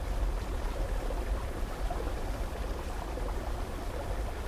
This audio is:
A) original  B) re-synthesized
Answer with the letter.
B